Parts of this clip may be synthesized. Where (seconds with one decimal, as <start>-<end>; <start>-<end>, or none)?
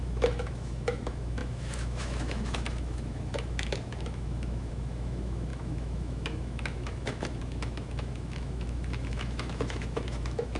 0.0-10.6